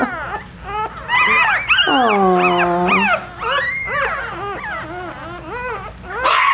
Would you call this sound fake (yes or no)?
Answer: no